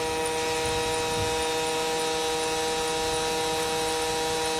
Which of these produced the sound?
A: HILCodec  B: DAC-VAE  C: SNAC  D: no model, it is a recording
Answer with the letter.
D